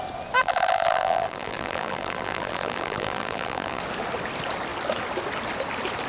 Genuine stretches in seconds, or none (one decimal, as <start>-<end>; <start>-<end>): 0.0-0.4; 3.8-6.1